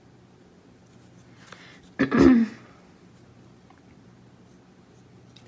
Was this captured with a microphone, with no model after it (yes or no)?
yes